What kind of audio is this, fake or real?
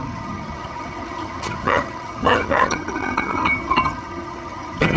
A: fake